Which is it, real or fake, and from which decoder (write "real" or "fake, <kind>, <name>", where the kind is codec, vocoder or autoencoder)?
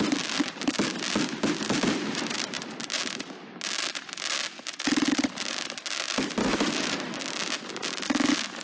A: real